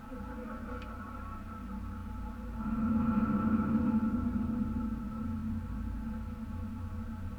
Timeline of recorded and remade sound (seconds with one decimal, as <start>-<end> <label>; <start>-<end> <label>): 0.0-7.4 recorded

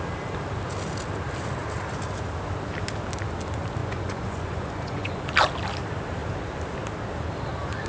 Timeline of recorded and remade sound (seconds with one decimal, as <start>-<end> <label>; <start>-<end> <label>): 0.0-3.8 recorded; 3.8-5.2 remade; 5.2-7.9 recorded

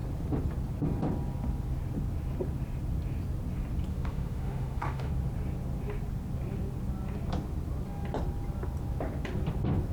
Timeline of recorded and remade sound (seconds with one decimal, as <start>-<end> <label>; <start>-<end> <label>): 0.0-3.9 recorded; 3.9-5.1 remade; 5.1-9.9 recorded

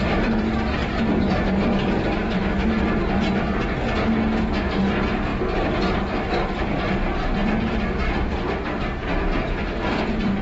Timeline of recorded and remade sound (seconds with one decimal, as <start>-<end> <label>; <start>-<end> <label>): 0.0-2.4 remade; 2.4-4.6 recorded; 4.6-10.4 remade

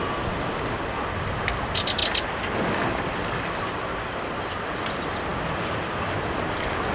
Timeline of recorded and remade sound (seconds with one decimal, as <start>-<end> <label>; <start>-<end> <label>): 0.0-6.9 recorded